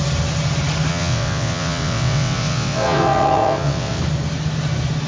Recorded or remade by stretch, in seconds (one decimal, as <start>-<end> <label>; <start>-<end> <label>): 0.0-0.9 recorded; 0.9-4.0 remade; 4.0-5.1 recorded